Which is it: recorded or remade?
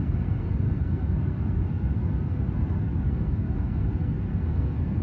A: remade